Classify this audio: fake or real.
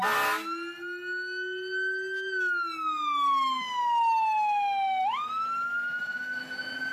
real